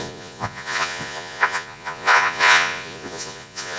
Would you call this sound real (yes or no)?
no